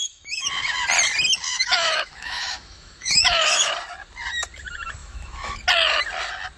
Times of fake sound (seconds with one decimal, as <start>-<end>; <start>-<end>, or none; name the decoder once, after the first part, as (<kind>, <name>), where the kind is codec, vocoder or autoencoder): 0.0-0.5 (autoencoder, DAC-VAE); 1.5-3.7; 5.0-5.6